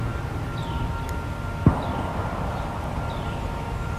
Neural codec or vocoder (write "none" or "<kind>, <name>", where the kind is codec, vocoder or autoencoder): vocoder, BigVGAN v2